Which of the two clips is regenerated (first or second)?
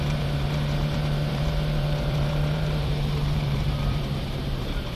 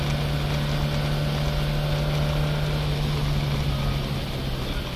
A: first